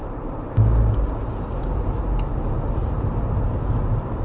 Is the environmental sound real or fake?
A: real